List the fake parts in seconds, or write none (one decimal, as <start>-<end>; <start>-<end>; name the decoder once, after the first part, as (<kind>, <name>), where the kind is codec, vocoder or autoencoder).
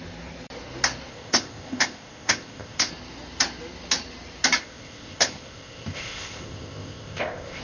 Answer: 1.1-2.9 (codec, ZipCodec); 4.6-7.6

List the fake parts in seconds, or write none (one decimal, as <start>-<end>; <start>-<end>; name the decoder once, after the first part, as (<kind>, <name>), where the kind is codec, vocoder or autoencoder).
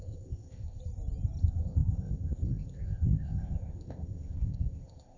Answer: 0.0-0.8 (codec, ZipCodec); 1.4-5.2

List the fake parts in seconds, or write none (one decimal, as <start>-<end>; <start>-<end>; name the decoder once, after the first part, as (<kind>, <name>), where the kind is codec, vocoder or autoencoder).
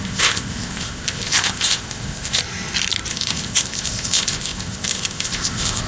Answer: 0.0-2.4 (codec, ZipCodec); 3.1-5.9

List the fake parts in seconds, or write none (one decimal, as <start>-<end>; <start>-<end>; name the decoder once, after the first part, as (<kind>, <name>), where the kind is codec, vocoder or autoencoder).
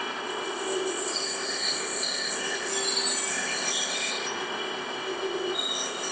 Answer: 0.0-2.7 (codec, ZipCodec); 3.3-6.1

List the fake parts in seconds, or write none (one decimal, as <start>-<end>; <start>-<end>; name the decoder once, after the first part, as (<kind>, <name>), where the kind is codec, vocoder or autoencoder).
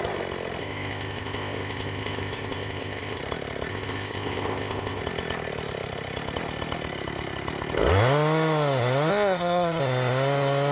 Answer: 0.6-3.2 (codec, ZipCodec); 3.7-5.0; 9.1-9.8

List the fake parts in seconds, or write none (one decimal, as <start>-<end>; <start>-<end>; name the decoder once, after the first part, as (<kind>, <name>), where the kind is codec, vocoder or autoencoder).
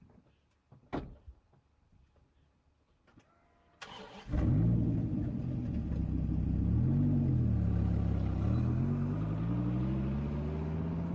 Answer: none